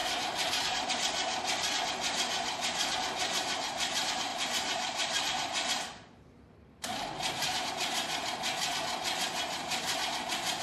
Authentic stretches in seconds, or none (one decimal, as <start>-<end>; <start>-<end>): 0.9-4.3; 7.7-9.6; 10.1-10.6